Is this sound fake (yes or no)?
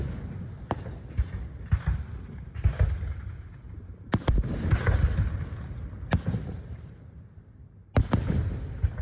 no